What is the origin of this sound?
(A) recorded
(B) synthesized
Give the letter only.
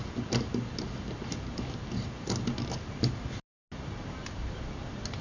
A